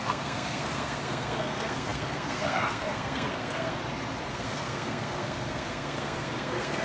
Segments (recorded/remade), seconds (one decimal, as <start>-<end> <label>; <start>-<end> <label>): 0.0-3.8 remade; 3.8-4.3 recorded; 4.3-6.8 remade